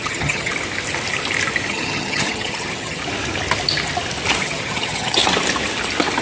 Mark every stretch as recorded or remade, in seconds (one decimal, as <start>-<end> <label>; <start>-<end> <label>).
0.0-0.5 remade; 0.5-1.7 recorded; 1.7-3.0 remade; 3.0-4.4 recorded; 4.4-5.2 remade; 5.2-6.2 recorded